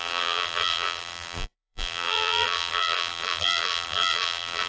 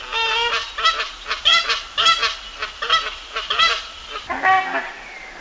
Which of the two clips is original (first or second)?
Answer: second